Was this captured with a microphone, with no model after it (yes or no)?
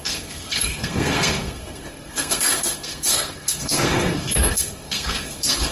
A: no